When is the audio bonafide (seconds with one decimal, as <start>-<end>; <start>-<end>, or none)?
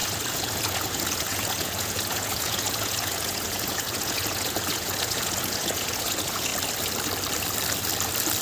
6.5-8.4